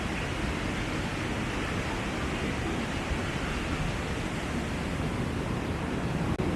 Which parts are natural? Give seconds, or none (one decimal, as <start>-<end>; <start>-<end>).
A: 0.0-6.6